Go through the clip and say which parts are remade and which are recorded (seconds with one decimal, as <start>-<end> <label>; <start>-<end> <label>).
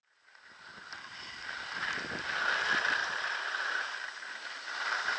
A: 0.0-3.0 recorded; 3.0-3.8 remade; 3.8-5.2 recorded